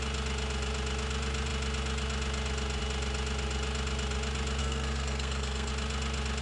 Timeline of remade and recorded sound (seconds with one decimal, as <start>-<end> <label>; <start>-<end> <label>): 0.0-4.6 recorded; 4.6-5.7 remade; 5.7-6.4 recorded